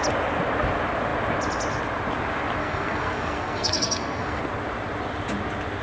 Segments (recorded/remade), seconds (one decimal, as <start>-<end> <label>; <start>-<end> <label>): 0.0-2.6 recorded; 2.6-4.4 remade; 4.4-5.8 recorded